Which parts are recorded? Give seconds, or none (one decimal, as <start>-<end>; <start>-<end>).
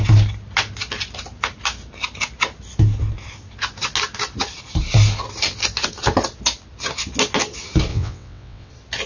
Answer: 0.0-7.9; 8.7-9.1